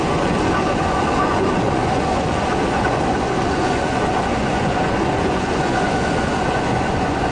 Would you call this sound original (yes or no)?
no